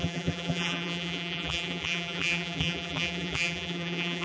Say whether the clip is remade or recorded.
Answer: remade